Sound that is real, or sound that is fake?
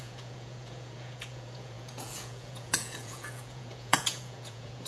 fake